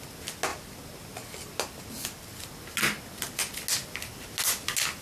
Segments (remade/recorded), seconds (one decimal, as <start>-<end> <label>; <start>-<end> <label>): 0.0-5.0 recorded